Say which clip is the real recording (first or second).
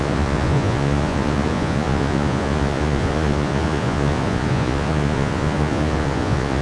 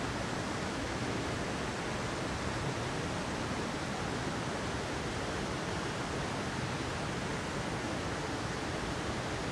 second